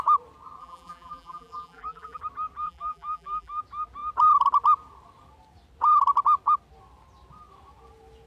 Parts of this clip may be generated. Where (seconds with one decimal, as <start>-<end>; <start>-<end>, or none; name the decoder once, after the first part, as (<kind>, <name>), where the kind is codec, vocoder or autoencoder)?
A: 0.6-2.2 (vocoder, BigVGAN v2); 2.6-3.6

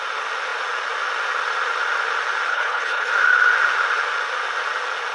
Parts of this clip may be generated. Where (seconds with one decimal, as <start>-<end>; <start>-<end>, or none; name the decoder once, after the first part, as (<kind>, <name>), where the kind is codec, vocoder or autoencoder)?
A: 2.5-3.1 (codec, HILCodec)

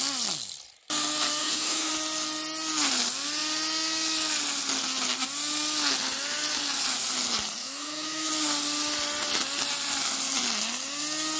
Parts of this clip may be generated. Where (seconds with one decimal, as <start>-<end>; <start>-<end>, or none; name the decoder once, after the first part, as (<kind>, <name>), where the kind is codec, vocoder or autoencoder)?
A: 1.4-1.9 (autoencoder, DAC-VAE); 7.6-8.3

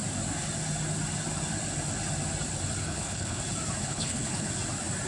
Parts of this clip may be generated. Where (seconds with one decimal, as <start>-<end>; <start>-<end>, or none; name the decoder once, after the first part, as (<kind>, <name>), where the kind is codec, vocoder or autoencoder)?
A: 2.8-3.4 (codec, HILCodec); 3.8-4.5

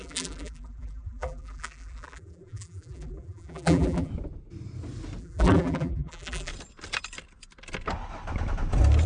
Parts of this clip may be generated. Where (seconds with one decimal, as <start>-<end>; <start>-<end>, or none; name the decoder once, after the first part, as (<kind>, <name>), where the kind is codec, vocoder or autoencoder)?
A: 0.0-4.1 (vocoder, BigVGAN v2); 5.2-6.5